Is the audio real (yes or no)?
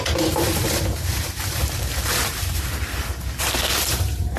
no